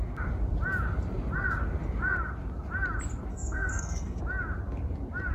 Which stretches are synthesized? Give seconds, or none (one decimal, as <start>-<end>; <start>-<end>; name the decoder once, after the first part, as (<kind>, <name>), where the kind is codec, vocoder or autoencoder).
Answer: 3.3-4.2 (codec, SNAC)